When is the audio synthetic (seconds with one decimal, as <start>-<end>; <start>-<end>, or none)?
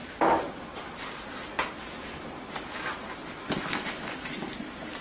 none